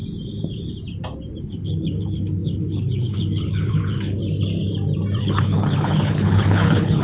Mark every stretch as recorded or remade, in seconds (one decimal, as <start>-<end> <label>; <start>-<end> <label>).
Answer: 0.0-1.4 recorded; 1.4-4.2 remade; 4.2-5.2 recorded; 5.2-7.0 remade